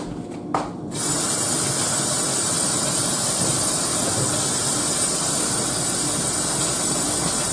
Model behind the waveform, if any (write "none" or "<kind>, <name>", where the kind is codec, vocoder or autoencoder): none